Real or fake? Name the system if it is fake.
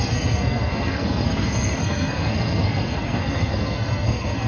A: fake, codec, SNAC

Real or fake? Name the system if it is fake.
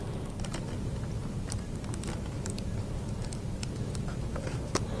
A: fake, vocoder, BigVGAN v2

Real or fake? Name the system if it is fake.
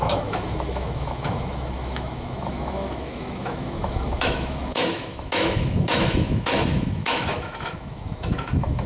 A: fake, autoencoder, DAC-VAE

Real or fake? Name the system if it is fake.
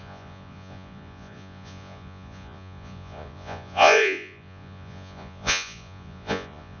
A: fake, vocoder, Vocos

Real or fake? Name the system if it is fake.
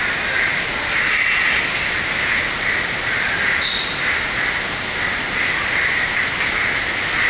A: real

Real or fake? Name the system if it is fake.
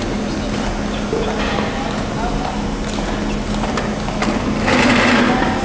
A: real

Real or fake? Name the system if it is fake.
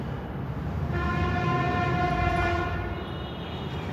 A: real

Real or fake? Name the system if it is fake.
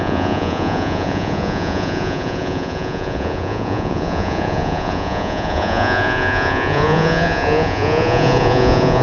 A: fake, vocoder, Vocos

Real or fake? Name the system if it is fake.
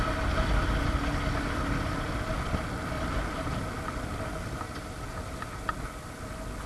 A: real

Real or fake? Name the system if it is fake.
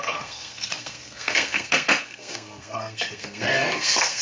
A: fake, codec, SNAC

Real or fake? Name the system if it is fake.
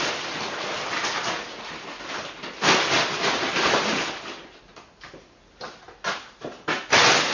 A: real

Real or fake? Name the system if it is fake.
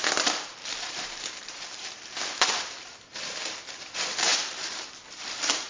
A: fake, vocoder, BigVGAN v2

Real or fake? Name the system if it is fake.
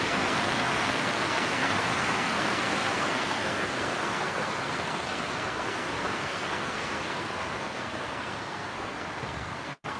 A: fake, codec, SNAC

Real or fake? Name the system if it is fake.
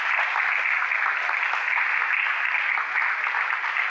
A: real